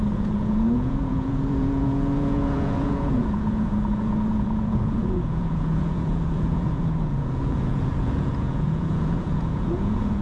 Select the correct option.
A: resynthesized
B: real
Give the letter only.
A